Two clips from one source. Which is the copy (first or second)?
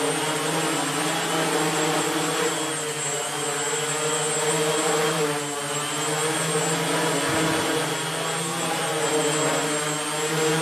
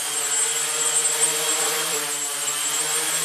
second